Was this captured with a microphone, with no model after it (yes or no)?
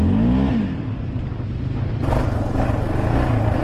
yes